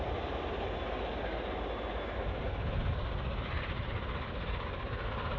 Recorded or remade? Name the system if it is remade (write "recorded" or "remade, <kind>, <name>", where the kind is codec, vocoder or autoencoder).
recorded